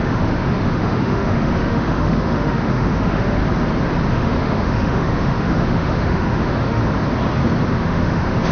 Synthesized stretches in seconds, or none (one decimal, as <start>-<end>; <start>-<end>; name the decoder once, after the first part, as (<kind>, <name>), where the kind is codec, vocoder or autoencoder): 0.0-3.4 (autoencoder, DAC-VAE); 4.1-6.8; 7.7-8.5